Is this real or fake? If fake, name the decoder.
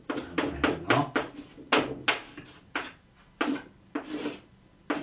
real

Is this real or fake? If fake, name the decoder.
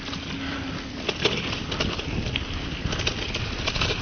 real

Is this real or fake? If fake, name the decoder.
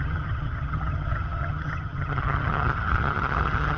fake, vocoder, HiFi-GAN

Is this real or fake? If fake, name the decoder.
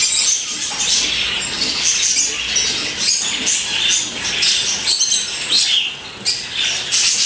real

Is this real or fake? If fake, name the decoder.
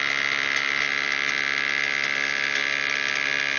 real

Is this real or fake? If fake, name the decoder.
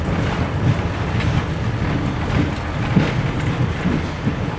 real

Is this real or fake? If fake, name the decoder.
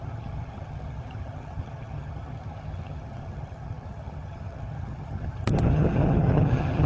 fake, vocoder, HiFi-GAN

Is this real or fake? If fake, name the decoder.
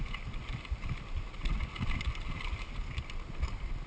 real